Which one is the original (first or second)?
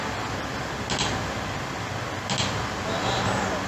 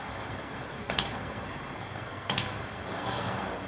first